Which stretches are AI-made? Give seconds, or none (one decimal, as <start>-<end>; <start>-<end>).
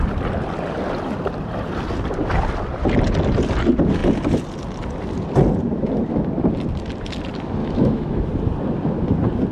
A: 7.6-8.3